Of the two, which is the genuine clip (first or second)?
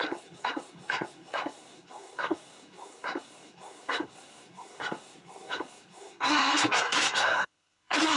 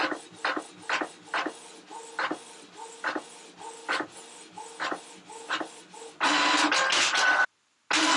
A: second